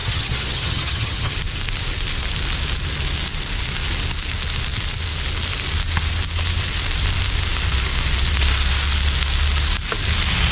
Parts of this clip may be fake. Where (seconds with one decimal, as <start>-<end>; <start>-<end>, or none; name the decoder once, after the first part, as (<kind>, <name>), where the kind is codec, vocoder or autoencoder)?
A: 0.0-1.3 (vocoder, HiFi-GAN)